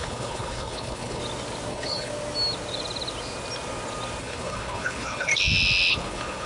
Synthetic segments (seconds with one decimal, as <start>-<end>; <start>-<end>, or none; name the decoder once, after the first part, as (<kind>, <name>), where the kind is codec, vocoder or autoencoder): 0.0-1.2 (codec, HILCodec); 1.7-2.1; 4.2-5.3; 5.9-6.5